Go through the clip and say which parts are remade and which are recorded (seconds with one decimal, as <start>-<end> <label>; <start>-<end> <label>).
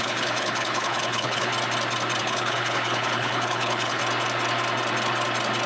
0.0-1.5 remade; 1.5-2.2 recorded; 2.2-4.0 remade; 4.0-5.7 recorded